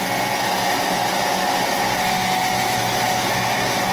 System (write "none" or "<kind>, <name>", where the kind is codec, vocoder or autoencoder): none